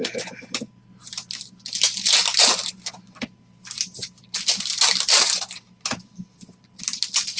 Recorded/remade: recorded